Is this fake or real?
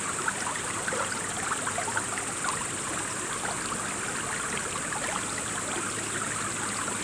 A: real